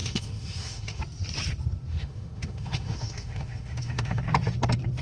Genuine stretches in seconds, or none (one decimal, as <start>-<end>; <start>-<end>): 1.0-1.9; 4.2-5.0